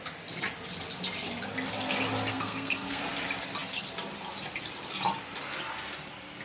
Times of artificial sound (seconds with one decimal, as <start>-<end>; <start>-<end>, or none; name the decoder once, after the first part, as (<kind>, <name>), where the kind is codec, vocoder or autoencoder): 2.3-3.0 (codec, SNAC)